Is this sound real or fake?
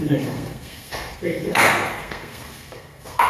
fake